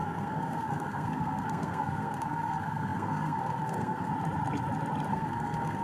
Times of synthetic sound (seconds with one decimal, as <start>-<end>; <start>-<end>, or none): 0.0-4.1; 5.1-5.8